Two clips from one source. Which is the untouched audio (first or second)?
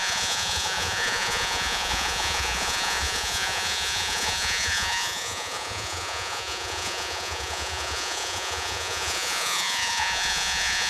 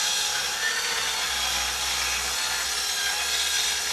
second